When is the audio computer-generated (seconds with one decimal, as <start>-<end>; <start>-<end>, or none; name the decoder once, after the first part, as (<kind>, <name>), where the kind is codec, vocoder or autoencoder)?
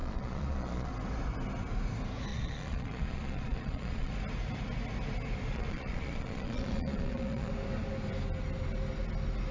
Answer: 0.0-0.9 (vocoder, Vocos); 2.3-4.1; 5.5-7.5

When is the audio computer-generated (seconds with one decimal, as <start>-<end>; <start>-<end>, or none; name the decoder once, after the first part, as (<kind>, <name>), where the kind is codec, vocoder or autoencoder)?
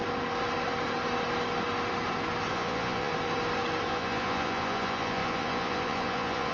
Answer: 2.5-3.1 (vocoder, Vocos); 3.9-6.5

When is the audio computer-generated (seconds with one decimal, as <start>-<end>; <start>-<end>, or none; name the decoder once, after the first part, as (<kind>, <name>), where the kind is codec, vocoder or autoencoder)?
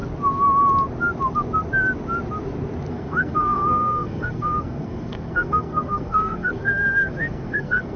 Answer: 2.9-8.0 (codec, SNAC)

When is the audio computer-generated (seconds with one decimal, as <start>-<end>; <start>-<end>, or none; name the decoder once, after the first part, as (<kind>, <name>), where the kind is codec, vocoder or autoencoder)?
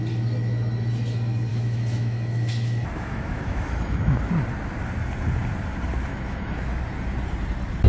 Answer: 1.5-4.3 (autoencoder, DAC-VAE); 6.1-6.8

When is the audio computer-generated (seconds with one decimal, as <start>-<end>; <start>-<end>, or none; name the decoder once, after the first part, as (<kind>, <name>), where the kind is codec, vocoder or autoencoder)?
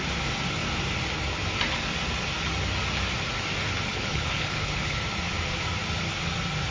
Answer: 3.9-5.0 (codec, HILCodec)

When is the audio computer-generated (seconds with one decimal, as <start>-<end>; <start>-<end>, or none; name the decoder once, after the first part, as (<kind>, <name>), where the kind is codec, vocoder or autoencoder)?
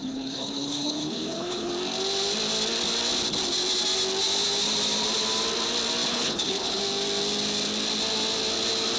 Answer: 0.0-1.7 (codec, HILCodec); 6.1-6.8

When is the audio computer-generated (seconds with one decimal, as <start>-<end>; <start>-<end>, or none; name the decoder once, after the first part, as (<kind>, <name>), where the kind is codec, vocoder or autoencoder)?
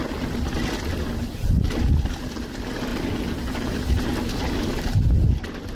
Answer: none